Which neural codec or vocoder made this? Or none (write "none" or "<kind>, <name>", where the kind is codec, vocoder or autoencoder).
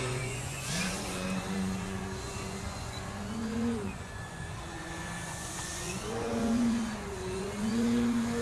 vocoder, Vocos